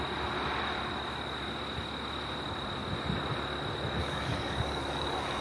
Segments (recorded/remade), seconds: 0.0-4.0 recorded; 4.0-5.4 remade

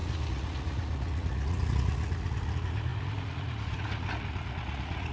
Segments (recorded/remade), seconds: 0.0-5.1 remade

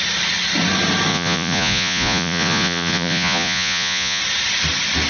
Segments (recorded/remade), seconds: 0.0-1.1 recorded; 1.1-4.2 remade; 4.2-5.1 recorded

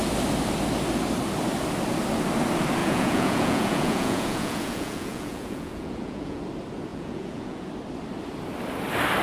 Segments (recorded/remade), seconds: 0.0-2.8 recorded; 2.8-6.4 remade; 6.4-6.9 recorded; 6.9-7.7 remade; 7.7-9.2 recorded

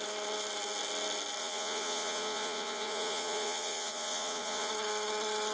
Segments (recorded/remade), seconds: 0.0-1.4 recorded; 1.4-4.7 remade; 4.7-5.5 recorded